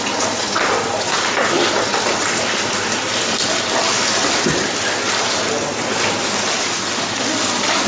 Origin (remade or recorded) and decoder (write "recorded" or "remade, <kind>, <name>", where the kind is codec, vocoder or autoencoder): recorded